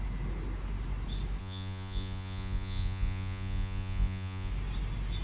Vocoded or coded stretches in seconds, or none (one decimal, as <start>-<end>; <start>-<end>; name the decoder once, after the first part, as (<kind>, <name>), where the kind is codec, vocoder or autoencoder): 1.4-4.5 (vocoder, Vocos)